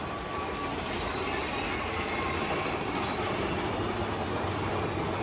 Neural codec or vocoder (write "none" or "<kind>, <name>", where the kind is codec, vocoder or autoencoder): none